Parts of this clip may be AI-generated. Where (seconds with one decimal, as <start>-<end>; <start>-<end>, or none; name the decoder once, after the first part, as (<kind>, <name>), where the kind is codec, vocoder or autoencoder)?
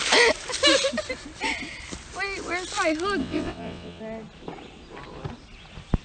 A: 3.2-4.0 (vocoder, WaveNeXt)